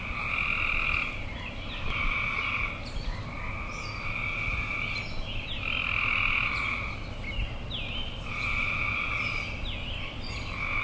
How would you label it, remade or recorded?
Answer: recorded